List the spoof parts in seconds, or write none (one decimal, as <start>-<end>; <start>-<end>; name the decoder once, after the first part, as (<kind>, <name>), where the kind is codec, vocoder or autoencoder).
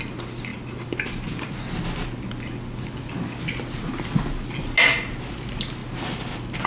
none